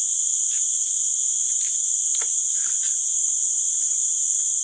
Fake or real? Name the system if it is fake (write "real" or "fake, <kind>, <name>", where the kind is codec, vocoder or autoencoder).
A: real